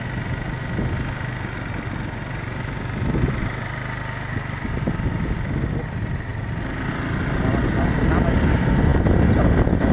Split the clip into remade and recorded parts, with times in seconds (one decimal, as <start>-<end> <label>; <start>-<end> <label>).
0.0-9.9 recorded

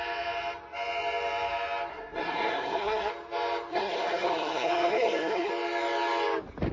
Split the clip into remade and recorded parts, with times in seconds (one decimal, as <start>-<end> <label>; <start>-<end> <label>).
0.0-1.9 recorded; 1.9-3.1 remade; 3.1-3.7 recorded; 3.7-5.5 remade; 5.5-6.7 recorded

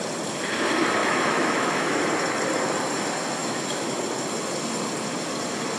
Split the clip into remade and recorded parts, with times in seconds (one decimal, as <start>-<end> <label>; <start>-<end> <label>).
0.0-1.0 recorded; 1.0-2.0 remade; 2.0-3.4 recorded; 3.4-4.0 remade; 4.0-5.8 recorded

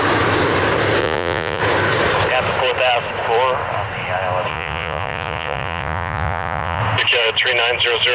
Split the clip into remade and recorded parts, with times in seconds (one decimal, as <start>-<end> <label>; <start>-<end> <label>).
0.0-1.0 recorded; 1.0-1.6 remade; 1.6-4.5 recorded; 4.5-6.8 remade; 6.8-8.1 recorded

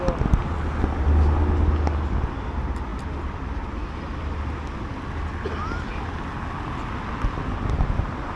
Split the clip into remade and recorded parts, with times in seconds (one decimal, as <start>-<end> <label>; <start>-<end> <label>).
0.0-8.4 recorded